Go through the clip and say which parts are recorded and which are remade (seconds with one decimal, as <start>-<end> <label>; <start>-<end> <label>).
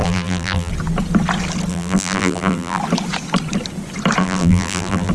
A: 0.0-0.7 remade; 0.7-1.7 recorded; 1.7-2.8 remade; 2.8-4.2 recorded; 4.2-5.1 remade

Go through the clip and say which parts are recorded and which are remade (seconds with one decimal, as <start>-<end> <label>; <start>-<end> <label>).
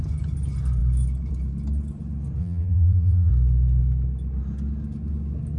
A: 0.0-2.4 recorded; 2.4-3.3 remade; 3.3-5.6 recorded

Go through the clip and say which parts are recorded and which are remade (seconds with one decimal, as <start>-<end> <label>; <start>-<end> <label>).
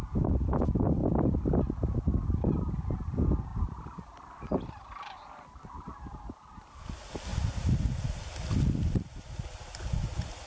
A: 0.0-1.0 recorded; 1.0-1.6 remade; 1.6-3.5 recorded; 3.5-6.0 remade; 6.0-7.3 recorded; 7.3-10.0 remade; 10.0-10.5 recorded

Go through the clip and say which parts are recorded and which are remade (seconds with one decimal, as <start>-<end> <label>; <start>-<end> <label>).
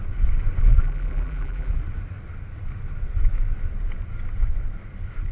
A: 0.0-0.6 recorded; 0.6-1.8 remade; 1.8-5.3 recorded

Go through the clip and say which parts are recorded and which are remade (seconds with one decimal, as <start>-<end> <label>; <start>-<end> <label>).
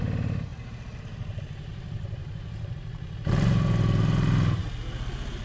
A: 0.0-0.5 remade; 0.5-1.0 recorded; 1.0-4.6 remade; 4.6-5.4 recorded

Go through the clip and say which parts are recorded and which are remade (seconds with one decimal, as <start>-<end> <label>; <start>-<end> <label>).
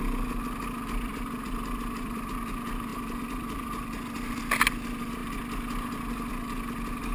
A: 0.0-1.1 recorded; 1.1-2.3 remade; 2.3-2.9 recorded; 2.9-3.8 remade; 3.8-7.1 recorded